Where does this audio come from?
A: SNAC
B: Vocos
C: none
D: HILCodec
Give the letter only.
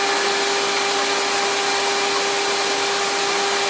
C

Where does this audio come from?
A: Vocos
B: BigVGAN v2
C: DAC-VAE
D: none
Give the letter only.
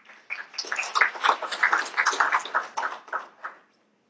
D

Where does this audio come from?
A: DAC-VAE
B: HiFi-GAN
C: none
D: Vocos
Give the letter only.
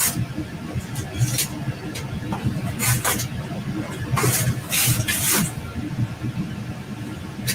C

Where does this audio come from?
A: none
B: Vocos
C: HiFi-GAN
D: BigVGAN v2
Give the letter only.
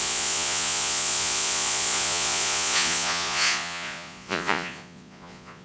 B